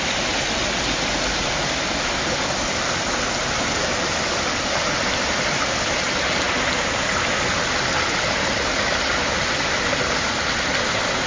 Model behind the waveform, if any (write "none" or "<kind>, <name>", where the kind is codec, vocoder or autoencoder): none